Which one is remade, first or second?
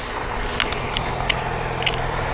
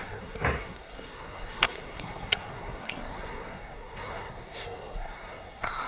second